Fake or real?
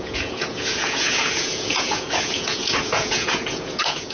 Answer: fake